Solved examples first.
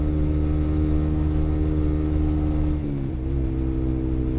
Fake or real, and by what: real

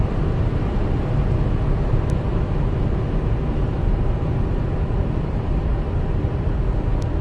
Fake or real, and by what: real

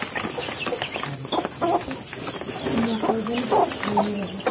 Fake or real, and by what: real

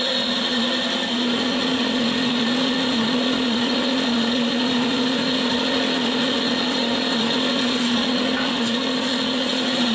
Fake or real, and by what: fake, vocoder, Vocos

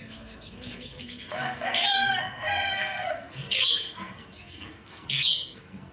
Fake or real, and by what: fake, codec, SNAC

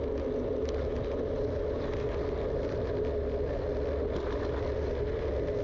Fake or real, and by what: real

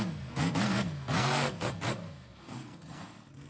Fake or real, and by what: fake, codec, SNAC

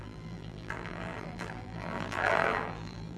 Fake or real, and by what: fake, vocoder, BigVGAN v2